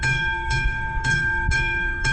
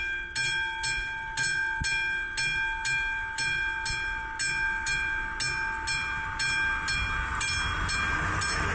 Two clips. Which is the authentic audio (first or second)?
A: second